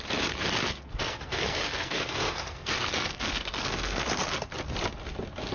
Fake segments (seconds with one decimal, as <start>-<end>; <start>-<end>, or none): 0.7-4.0